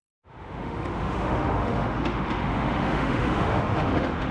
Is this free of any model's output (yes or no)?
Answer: no